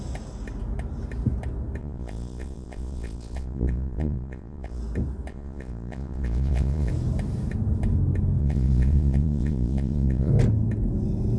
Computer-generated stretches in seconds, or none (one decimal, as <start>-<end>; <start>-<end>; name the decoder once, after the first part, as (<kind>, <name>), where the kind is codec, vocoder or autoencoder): 1.8-4.8 (vocoder, Vocos); 5.3-6.9; 8.4-10.3